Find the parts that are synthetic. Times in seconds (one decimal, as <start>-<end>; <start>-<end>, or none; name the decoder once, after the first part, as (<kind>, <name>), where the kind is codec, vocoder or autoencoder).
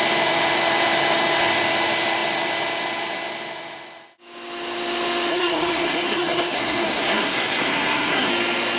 5.3-8.3 (codec, SNAC)